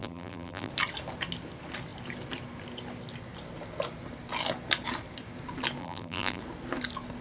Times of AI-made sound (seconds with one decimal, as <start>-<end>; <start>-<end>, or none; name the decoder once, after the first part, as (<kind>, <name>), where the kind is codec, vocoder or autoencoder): 0.0-0.7 (vocoder, BigVGAN v2); 5.8-6.4